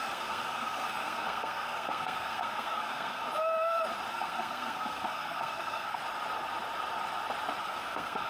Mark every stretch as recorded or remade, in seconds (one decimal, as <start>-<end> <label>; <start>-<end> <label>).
0.0-3.2 remade; 3.2-4.1 recorded; 4.1-6.0 remade; 6.0-7.6 recorded; 7.6-8.3 remade